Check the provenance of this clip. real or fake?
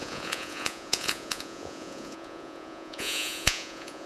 fake